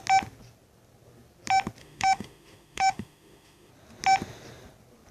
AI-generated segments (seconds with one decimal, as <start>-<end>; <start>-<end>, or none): 1.8-3.7